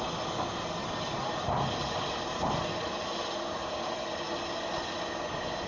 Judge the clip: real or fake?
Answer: real